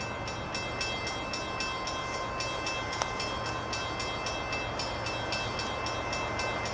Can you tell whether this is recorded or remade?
recorded